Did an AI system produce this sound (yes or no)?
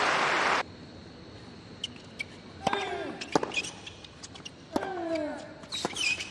no